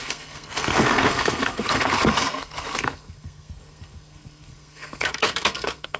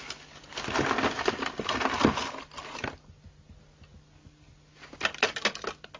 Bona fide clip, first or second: second